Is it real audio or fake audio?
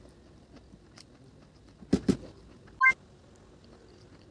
real